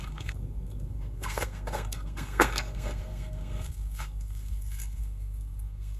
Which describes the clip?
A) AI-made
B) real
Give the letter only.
A